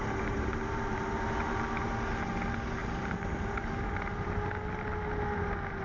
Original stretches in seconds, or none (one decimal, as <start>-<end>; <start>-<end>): 1.9-2.8; 4.0-5.8